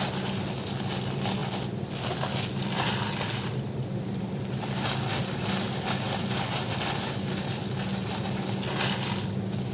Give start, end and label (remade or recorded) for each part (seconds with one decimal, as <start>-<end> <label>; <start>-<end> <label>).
0.0-9.7 recorded